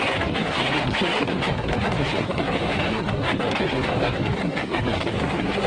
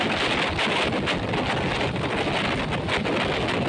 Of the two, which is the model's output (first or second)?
first